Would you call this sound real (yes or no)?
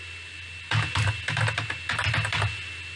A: yes